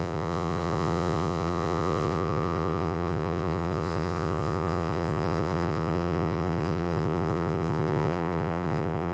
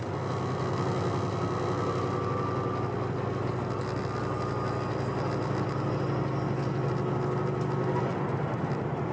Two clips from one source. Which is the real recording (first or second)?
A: second